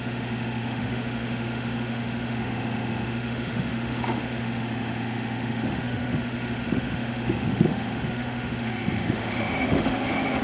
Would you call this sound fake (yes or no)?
yes